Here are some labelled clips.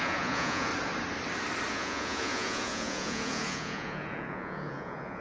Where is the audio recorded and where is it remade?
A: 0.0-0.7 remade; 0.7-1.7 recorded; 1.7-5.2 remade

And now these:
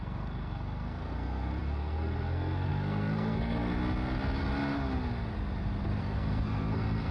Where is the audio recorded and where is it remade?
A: 0.0-3.8 remade; 3.8-6.0 recorded; 6.0-7.1 remade

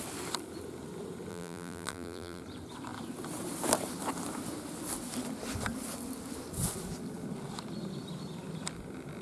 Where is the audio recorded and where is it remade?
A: 0.0-1.3 recorded; 1.3-2.4 remade; 2.4-9.2 recorded

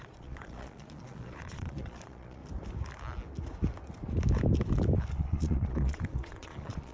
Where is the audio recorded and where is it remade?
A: 0.0-2.4 remade; 2.4-5.1 recorded; 5.1-6.9 remade

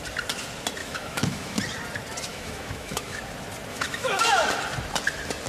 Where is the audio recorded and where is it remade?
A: 0.0-0.8 recorded; 0.8-1.6 remade; 1.6-2.3 recorded; 2.3-3.2 remade; 3.2-3.7 recorded; 3.7-4.2 remade; 4.2-5.5 recorded

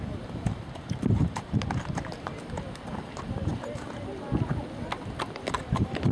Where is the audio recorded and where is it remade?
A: 0.0-3.5 remade; 3.5-5.6 recorded; 5.6-6.1 remade